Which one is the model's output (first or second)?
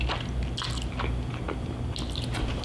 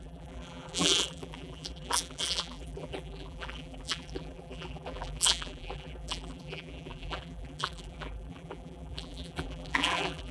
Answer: second